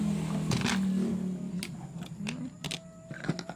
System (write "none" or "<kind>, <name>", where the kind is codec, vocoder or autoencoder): none